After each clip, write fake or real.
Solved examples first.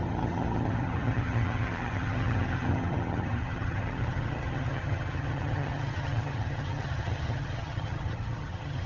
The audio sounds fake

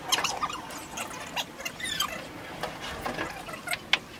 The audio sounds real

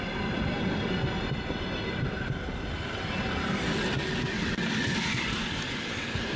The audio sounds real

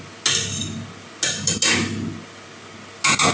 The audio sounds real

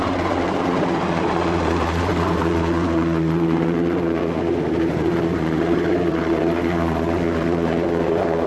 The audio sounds fake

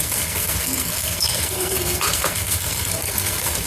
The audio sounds fake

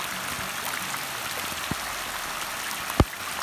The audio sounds real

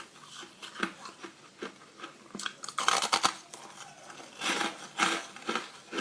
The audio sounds real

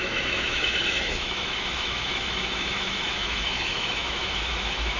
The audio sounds fake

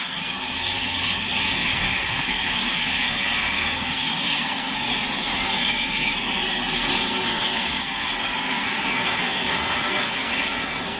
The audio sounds fake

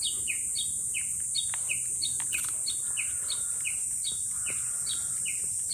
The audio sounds real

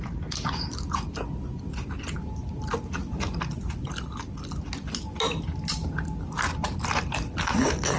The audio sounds real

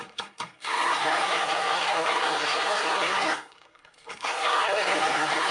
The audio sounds fake